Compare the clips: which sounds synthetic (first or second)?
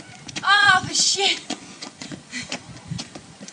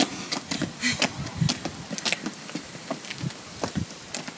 first